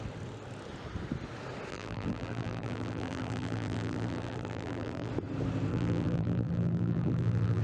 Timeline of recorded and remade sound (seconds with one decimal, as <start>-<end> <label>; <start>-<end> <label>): 0.0-1.7 recorded; 1.7-5.1 remade; 5.1-5.7 recorded; 5.7-7.6 remade